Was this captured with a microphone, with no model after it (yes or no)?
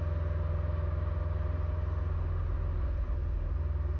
yes